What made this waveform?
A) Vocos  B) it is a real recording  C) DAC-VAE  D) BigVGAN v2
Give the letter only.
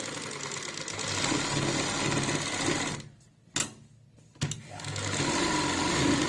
B